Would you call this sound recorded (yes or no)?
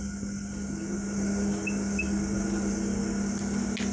yes